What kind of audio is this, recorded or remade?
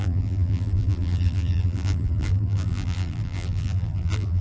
remade